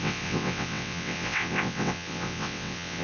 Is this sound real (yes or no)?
no